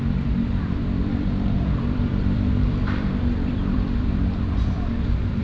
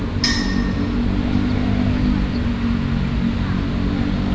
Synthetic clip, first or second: first